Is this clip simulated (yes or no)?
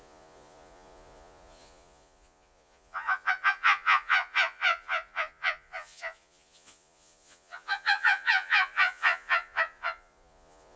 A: yes